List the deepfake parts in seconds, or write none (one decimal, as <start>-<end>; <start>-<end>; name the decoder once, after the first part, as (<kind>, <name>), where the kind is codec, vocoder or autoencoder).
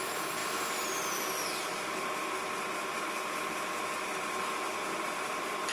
none